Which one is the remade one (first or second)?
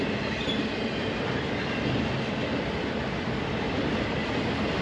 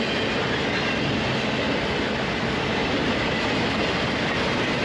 first